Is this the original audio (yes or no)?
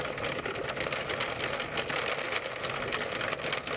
yes